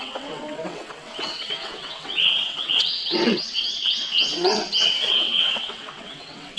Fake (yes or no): yes